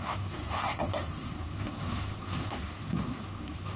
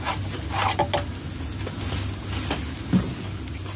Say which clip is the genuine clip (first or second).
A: second